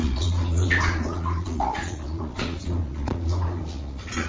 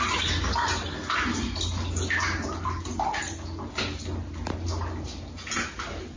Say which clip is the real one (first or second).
second